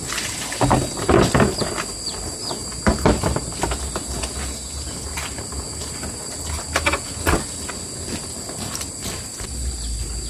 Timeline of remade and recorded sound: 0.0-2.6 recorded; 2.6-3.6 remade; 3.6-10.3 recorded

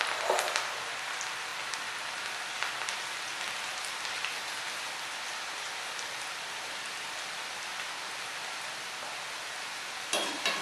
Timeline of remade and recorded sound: 0.0-10.6 recorded